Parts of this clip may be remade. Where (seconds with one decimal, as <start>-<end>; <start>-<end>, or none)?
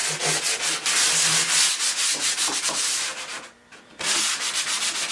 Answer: 3.1-3.9